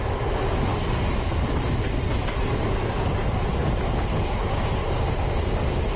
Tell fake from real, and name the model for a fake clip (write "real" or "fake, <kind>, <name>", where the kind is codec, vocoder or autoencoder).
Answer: real